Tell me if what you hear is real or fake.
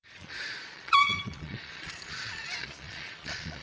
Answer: fake